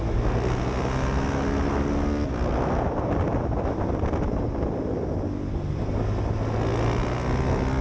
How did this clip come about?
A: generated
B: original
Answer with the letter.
B